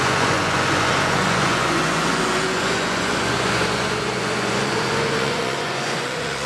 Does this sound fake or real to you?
fake